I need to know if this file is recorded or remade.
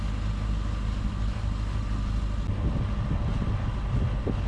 recorded